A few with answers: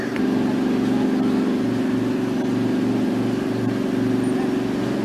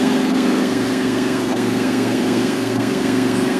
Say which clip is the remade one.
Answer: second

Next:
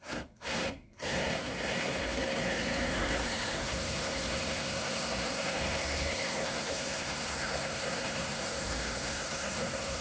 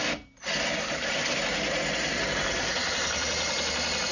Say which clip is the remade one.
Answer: first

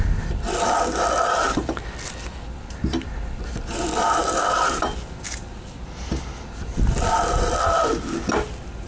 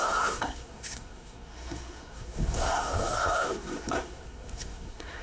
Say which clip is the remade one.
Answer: second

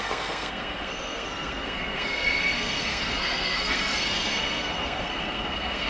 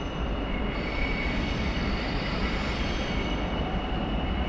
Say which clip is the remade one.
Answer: first